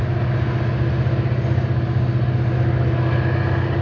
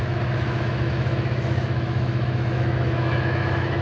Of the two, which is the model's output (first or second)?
second